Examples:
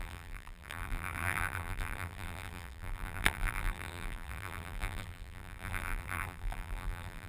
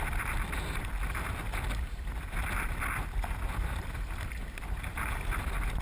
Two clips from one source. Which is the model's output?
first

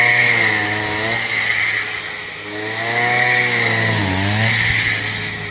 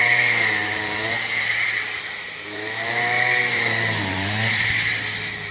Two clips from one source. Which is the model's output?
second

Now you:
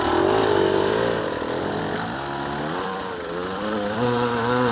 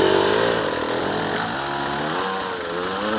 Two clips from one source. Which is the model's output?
first